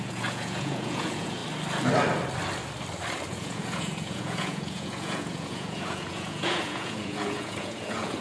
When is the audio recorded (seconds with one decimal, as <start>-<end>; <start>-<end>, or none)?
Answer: 1.4-3.3